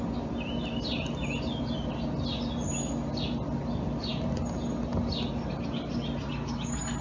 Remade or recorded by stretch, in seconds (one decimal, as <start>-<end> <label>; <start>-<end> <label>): 0.0-7.0 recorded